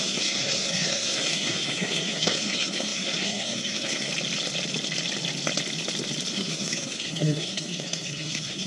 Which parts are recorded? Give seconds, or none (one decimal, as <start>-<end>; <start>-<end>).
4.1-6.3